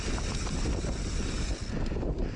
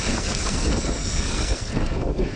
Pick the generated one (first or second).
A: second